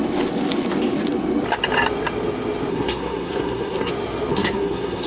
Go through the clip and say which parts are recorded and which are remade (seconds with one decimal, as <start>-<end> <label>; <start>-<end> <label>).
0.0-2.7 recorded; 2.7-3.9 remade; 3.9-4.3 recorded; 4.3-5.1 remade